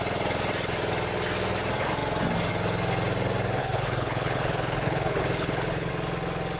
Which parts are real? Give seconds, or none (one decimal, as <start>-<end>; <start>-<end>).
0.0-3.6; 5.9-6.6